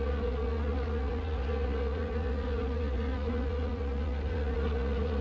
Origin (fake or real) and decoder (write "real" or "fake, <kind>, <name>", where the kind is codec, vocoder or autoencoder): fake, vocoder, Vocos